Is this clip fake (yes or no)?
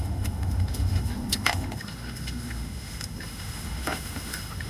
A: yes